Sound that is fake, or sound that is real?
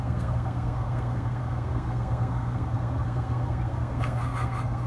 fake